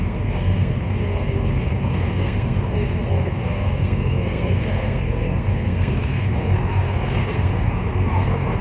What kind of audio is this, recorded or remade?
remade